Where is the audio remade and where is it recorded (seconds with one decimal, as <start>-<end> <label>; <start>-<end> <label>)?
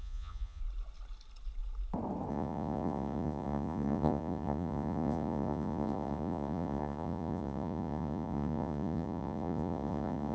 0.0-0.6 remade; 0.6-2.3 recorded; 2.3-10.3 remade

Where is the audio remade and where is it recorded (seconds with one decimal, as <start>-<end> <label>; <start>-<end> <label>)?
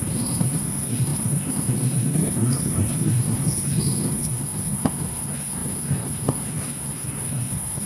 0.0-7.9 remade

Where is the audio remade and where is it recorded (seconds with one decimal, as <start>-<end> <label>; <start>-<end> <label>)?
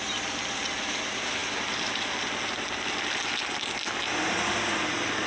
0.0-5.3 recorded